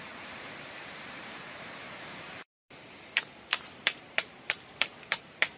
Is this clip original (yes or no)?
no